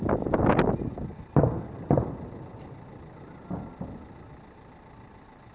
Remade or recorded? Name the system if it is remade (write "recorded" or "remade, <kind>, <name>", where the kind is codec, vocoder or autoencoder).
recorded